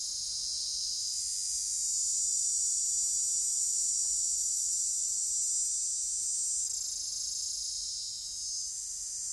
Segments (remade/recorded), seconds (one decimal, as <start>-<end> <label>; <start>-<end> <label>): 0.0-0.4 recorded; 0.4-1.2 remade; 1.2-2.3 recorded; 2.3-2.8 remade; 2.8-3.5 recorded; 3.5-5.3 remade; 5.3-9.3 recorded